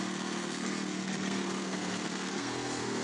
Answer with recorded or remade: remade